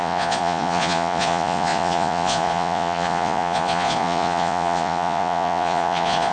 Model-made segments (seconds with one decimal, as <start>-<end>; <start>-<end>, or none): 0.0-6.3